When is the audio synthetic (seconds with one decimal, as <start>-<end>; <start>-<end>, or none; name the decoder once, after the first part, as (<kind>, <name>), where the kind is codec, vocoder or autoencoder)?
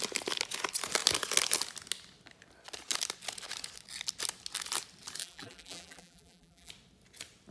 5.2-6.7 (vocoder, BigVGAN v2)